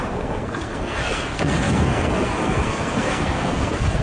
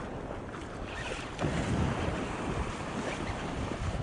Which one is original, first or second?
second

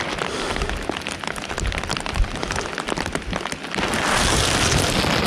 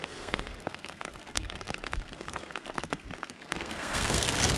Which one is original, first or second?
first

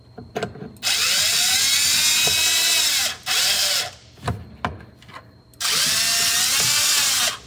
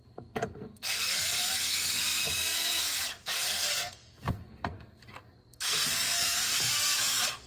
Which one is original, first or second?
first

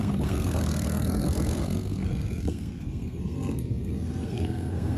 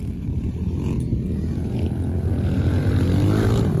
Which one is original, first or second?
second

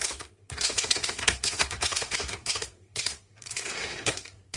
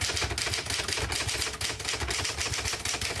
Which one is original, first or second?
second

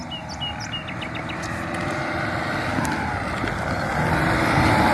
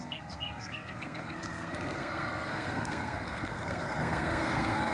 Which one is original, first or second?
first